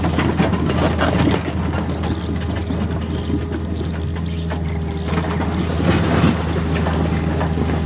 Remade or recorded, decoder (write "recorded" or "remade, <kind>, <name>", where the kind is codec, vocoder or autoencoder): recorded